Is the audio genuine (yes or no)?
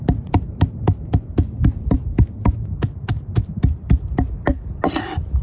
yes